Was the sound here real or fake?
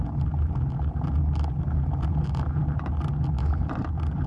real